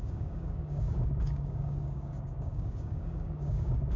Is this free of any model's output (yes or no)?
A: no